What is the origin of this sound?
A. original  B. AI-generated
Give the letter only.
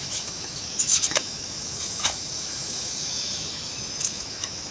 B